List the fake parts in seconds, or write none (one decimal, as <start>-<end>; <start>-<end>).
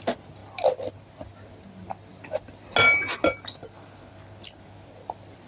none